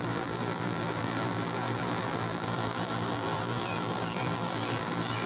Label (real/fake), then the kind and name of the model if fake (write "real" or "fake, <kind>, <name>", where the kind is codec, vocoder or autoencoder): fake, vocoder, BigVGAN v2